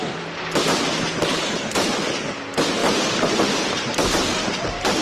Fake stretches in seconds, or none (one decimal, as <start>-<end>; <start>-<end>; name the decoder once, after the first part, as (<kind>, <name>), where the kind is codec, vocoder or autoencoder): 1.3-2.0 (vocoder, BigVGAN v2); 2.8-5.0